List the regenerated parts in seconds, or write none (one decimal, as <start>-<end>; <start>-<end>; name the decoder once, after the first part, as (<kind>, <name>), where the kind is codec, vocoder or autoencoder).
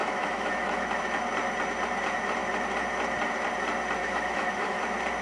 0.0-0.9 (autoencoder, DAC-VAE); 4.0-4.8